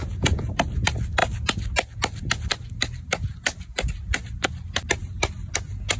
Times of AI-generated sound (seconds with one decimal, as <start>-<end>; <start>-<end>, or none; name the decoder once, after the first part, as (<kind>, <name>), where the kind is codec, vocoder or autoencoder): 0.0-0.5 (vocoder, Vocos)

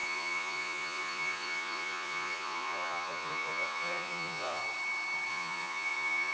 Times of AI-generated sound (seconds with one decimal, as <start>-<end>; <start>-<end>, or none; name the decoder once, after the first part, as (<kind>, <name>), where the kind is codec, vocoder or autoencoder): 0.0-4.6 (vocoder, Vocos); 5.3-6.3

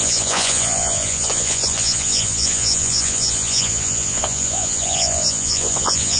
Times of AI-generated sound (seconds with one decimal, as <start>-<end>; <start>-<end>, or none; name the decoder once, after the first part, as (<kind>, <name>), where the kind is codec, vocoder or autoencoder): 0.0-6.2 (vocoder, Vocos)

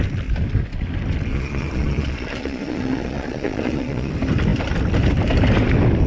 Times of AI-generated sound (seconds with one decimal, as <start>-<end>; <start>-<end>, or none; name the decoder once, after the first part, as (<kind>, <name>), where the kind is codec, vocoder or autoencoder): 1.3-4.1 (vocoder, Vocos)

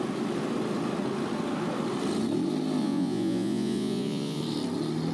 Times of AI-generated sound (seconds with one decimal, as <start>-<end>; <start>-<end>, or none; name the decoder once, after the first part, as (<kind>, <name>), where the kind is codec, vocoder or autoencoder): 2.8-4.4 (vocoder, Vocos)

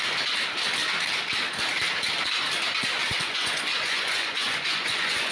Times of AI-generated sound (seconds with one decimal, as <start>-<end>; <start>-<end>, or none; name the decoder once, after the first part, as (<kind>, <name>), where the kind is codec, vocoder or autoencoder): 3.0-5.3 (vocoder, Vocos)